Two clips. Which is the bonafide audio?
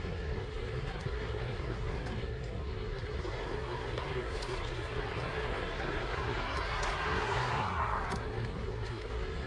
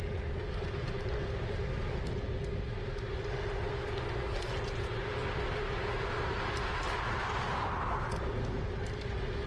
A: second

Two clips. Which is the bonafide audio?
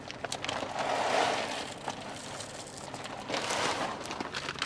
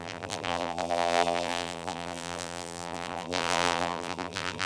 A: first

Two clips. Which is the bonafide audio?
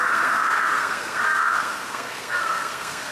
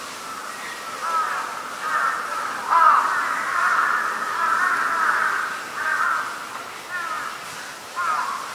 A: second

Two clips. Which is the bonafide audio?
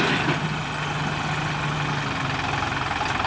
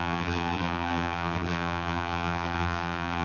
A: first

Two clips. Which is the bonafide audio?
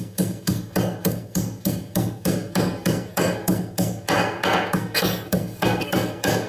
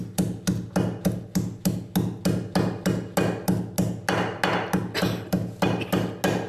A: second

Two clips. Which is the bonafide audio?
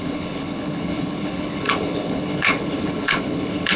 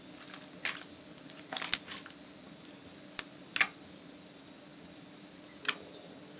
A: second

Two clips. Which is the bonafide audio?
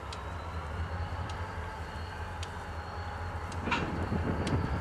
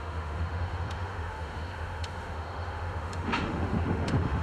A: first